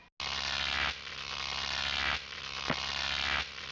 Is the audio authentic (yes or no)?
yes